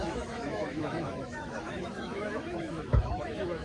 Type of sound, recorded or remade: remade